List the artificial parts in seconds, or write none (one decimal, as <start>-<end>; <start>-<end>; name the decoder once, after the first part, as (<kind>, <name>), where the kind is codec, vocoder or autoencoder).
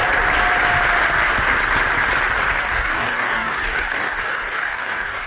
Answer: 2.6-5.3 (codec, DAC)